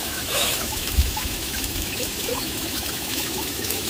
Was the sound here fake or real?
fake